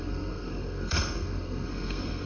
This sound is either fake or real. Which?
fake